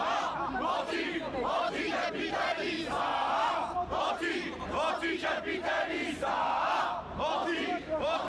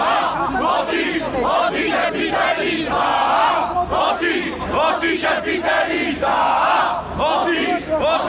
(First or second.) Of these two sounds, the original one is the second